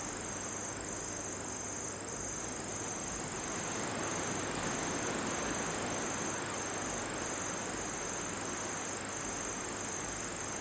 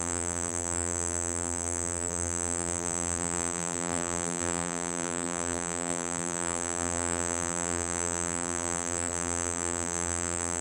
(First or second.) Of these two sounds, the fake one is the second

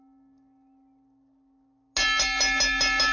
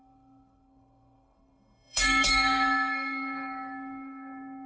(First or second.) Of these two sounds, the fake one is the second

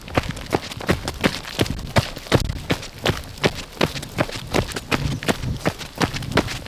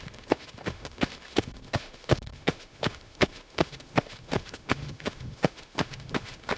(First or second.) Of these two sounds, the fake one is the second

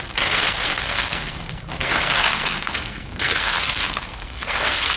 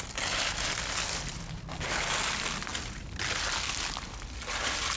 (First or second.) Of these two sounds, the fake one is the first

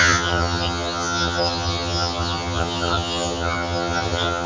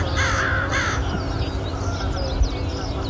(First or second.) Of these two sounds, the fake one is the first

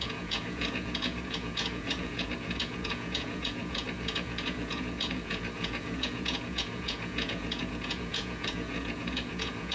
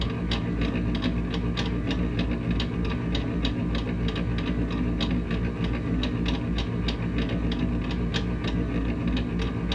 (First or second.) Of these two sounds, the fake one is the first